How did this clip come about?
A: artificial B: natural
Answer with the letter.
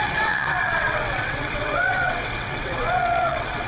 A